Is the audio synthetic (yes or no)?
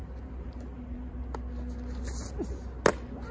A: no